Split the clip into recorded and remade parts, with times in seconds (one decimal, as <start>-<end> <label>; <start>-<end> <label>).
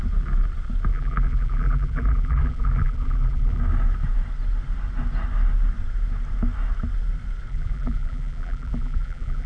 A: 0.0-0.9 recorded; 0.9-3.6 remade; 3.6-7.5 recorded; 7.5-9.5 remade